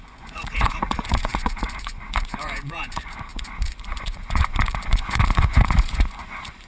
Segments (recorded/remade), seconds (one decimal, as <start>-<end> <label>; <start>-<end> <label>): 0.0-6.7 remade